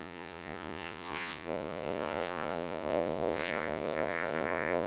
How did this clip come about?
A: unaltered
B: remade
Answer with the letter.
B